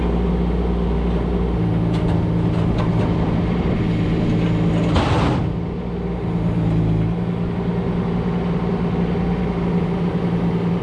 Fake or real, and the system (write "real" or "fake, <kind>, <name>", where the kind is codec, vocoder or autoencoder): real